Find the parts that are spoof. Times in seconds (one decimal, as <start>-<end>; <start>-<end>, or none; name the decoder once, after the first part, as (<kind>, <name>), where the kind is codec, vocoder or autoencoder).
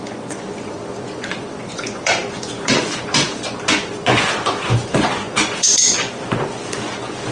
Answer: 0.0-7.3 (vocoder, Vocos)